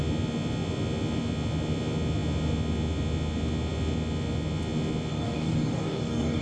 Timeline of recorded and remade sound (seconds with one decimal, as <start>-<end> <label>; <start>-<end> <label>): 0.0-5.1 recorded; 5.1-6.4 remade